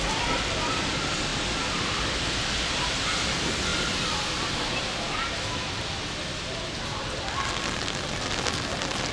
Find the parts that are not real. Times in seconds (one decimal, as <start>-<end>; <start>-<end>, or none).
none